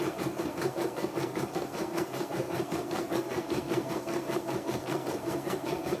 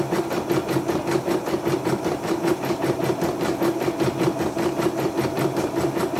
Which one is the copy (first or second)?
first